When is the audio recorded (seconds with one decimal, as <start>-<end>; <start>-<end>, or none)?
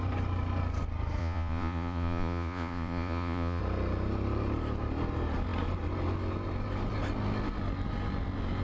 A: 0.0-1.2; 3.6-8.6